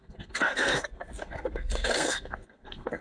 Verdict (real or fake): fake